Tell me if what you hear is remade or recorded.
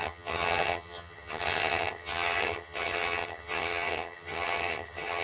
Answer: remade